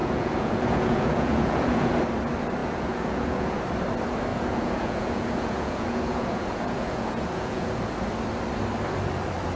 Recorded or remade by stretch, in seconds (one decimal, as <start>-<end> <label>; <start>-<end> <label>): 0.0-1.9 remade; 1.9-2.6 recorded; 2.6-3.6 remade; 3.6-4.3 recorded; 4.3-7.8 remade; 7.8-9.6 recorded